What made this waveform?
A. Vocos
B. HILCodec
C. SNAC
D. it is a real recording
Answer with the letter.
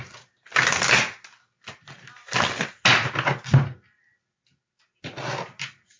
D